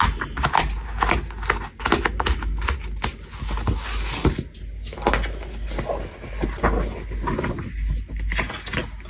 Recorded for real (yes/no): yes